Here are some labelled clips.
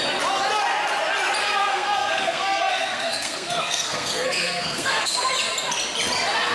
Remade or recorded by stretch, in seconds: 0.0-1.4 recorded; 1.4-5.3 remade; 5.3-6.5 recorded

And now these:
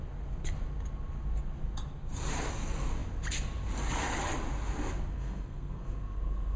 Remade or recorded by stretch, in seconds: 0.0-5.1 recorded; 5.1-6.6 remade

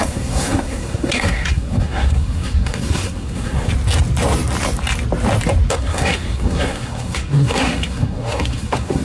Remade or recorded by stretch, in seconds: 0.0-3.7 remade; 3.7-5.7 recorded; 5.7-9.0 remade

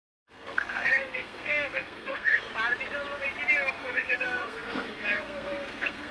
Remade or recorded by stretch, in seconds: 0.0-2.5 remade; 2.5-3.7 recorded; 3.7-6.1 remade

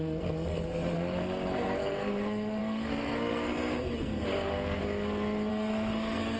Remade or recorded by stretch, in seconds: 0.0-4.8 remade; 4.8-5.5 recorded; 5.5-6.4 remade

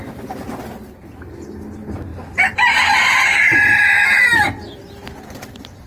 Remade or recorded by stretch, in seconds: 0.0-5.9 recorded

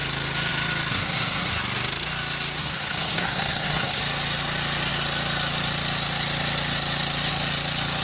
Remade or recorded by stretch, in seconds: 0.0-0.9 recorded; 0.9-1.5 remade; 1.5-2.6 recorded; 2.6-4.0 remade; 4.0-8.0 recorded

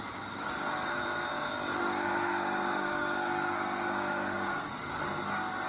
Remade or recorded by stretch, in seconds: 0.0-1.8 recorded; 1.8-4.7 remade; 4.7-5.7 recorded